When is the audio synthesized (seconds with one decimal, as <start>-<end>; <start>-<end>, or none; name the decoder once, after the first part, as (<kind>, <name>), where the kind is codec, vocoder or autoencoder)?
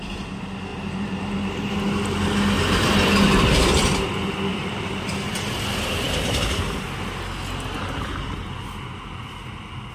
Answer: 0.7-1.7 (vocoder, BigVGAN v2); 4.5-5.5